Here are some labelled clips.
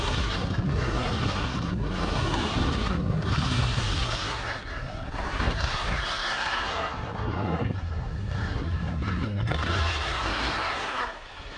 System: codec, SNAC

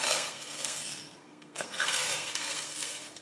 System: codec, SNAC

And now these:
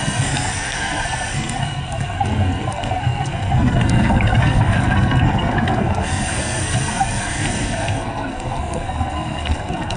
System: codec, SNAC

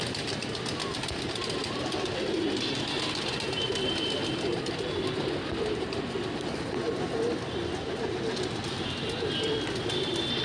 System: none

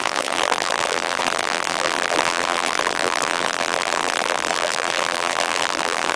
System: vocoder, BigVGAN v2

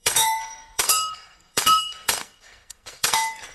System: codec, SNAC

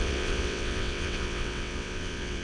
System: vocoder, WaveNeXt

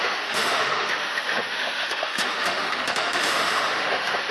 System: autoencoder, DAC-VAE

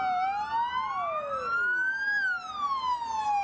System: none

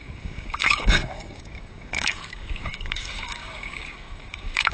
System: codec, DAC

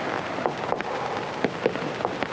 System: none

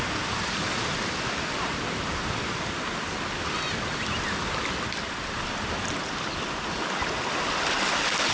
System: none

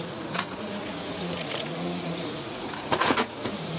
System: vocoder, Vocos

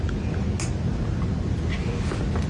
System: none